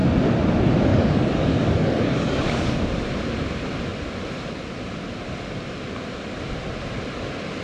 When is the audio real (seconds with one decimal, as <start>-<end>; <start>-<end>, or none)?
0.0-0.9; 2.8-7.6